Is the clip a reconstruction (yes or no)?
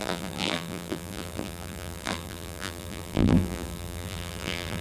yes